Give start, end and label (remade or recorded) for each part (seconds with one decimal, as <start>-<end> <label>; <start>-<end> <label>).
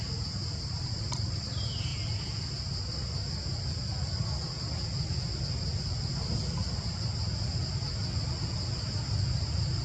0.0-9.8 recorded